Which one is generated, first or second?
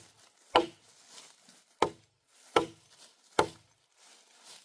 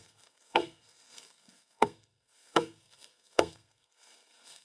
second